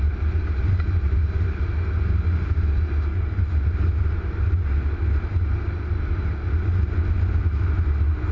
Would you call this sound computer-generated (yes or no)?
no